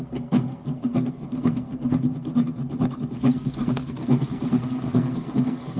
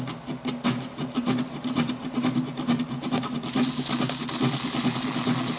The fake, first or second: first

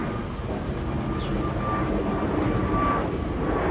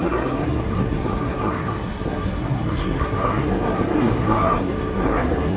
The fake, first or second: second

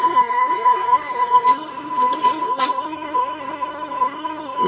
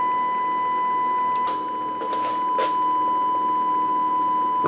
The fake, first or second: first